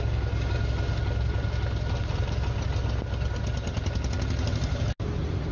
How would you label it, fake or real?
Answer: real